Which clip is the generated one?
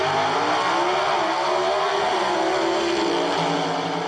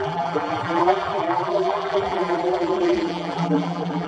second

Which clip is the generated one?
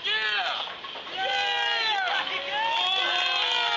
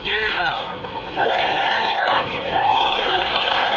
second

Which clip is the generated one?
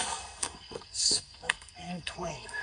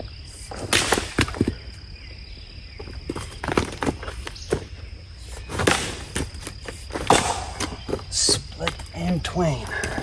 first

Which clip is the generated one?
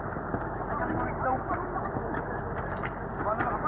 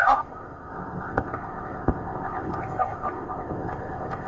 second